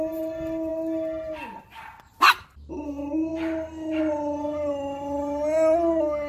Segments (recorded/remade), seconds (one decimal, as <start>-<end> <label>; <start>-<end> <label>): 0.0-6.3 recorded